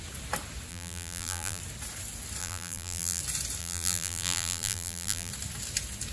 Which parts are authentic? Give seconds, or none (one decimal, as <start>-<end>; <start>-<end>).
0.0-0.7; 1.6-2.4; 3.2-3.6; 5.3-6.1